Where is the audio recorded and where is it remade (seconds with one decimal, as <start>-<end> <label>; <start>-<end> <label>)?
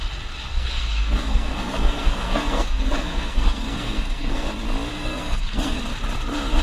0.0-0.5 recorded; 0.5-4.5 remade; 4.5-4.9 recorded; 4.9-5.8 remade; 5.8-6.6 recorded